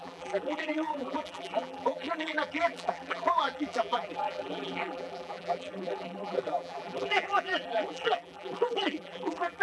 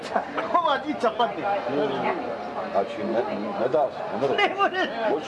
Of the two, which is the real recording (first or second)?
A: second